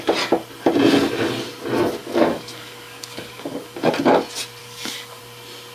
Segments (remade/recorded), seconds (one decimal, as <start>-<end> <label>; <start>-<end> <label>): 0.0-2.0 recorded; 2.0-3.9 remade; 3.9-4.6 recorded; 4.6-5.2 remade; 5.2-5.7 recorded